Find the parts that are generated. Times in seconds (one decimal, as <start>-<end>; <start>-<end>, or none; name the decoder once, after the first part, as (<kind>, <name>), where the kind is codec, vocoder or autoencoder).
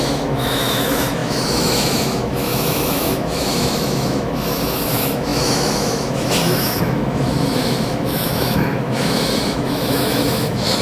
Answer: 0.0-10.8 (autoencoder, DAC-VAE)